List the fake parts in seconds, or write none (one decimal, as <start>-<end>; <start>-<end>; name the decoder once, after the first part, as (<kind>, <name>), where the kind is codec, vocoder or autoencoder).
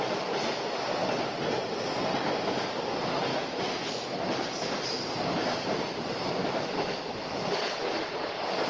3.3-3.9 (autoencoder, DAC-VAE); 6.4-7.5